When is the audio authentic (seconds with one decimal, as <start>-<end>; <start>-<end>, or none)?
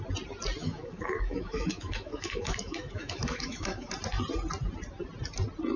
0.0-0.6; 3.9-5.8